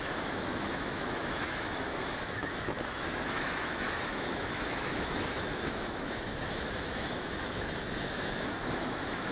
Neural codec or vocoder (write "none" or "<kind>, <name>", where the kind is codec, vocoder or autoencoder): autoencoder, DAC-VAE